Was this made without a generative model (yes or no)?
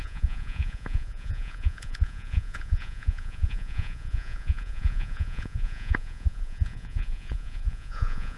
no